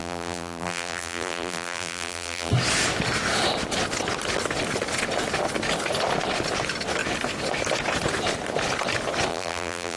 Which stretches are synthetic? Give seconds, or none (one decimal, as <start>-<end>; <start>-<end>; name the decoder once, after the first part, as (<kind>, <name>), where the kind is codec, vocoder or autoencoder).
0.0-2.5 (vocoder, BigVGAN v2); 9.3-10.0

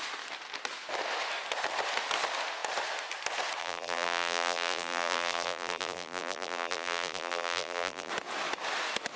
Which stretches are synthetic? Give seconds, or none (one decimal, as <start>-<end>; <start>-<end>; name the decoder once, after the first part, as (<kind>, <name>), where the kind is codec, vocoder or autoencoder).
3.6-8.1 (vocoder, BigVGAN v2)